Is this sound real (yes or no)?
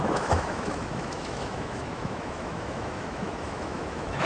no